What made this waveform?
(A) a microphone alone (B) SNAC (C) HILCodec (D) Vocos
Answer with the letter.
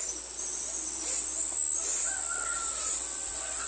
A